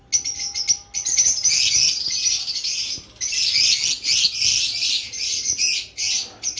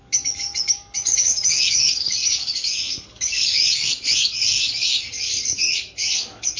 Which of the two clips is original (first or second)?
first